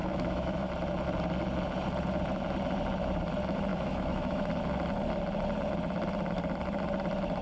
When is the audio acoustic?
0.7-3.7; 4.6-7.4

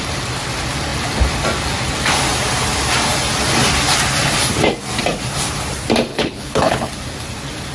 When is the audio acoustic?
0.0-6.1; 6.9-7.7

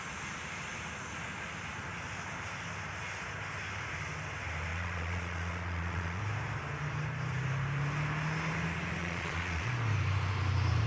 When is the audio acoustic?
0.0-4.7; 6.2-9.0; 9.7-10.9

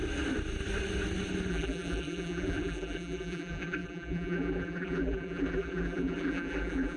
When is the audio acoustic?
0.0-1.5